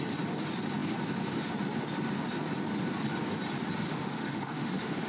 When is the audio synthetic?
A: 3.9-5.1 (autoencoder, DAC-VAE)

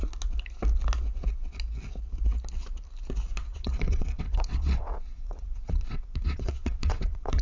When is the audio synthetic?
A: 3.3-7.4 (vocoder, WaveNeXt)